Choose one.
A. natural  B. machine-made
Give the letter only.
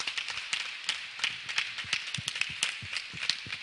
A